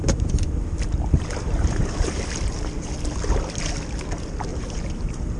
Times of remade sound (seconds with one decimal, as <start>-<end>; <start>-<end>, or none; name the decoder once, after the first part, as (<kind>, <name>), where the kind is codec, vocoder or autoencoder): 0.0-2.2 (vocoder, BigVGAN v2); 4.5-5.4

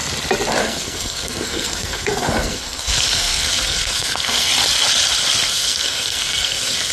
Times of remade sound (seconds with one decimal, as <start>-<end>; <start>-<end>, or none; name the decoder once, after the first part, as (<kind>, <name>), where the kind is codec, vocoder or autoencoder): 0.6-4.5 (codec, SNAC); 5.5-6.9

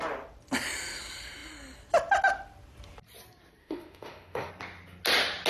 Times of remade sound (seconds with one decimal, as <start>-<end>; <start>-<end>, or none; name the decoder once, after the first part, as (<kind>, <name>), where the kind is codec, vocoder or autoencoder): 3.6-4.5 (autoencoder, DAC-VAE)

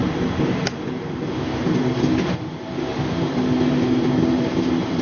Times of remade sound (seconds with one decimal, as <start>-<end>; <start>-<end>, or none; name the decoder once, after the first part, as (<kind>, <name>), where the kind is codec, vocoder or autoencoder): none

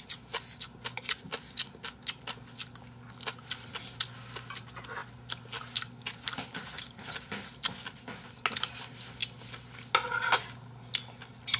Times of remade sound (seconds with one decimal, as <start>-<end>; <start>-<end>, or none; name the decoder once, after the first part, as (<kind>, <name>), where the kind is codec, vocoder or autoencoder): none

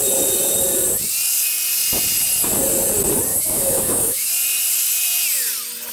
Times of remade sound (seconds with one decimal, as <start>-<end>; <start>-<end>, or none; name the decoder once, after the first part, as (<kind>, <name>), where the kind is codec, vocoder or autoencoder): 3.3-4.3 (autoencoder, DAC-VAE)